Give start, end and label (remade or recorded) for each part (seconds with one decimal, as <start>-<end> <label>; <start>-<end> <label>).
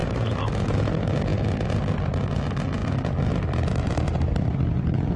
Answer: 0.0-2.8 recorded; 2.8-5.2 remade